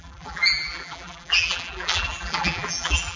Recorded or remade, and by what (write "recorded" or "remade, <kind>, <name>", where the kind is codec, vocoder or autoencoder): remade, vocoder, BigVGAN v2